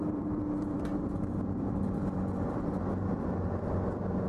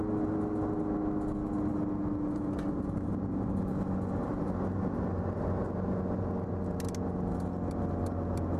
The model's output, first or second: first